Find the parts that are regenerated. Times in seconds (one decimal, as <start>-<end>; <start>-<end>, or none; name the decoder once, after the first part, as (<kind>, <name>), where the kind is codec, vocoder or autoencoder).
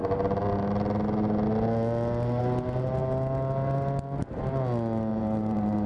5.1-5.9 (vocoder, BigVGAN v2)